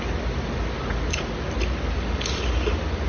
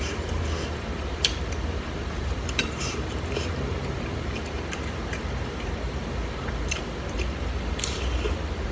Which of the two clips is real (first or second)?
first